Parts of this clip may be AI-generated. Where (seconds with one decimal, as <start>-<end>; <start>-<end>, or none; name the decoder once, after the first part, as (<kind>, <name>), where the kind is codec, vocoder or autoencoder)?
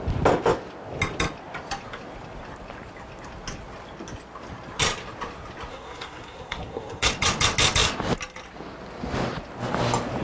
5.7-7.1 (codec, SNAC)